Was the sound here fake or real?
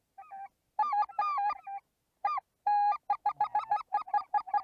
real